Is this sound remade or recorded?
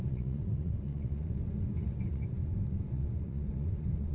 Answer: remade